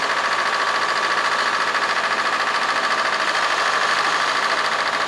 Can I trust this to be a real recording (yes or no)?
no